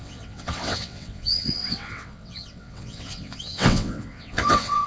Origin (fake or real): fake